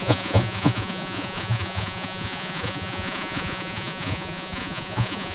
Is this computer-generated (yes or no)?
yes